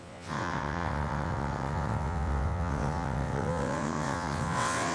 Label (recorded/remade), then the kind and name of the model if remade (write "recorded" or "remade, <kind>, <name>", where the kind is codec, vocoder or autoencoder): remade, vocoder, WaveNeXt